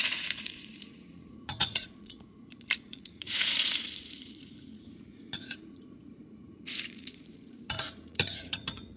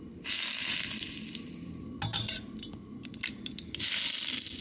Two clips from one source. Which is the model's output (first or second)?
first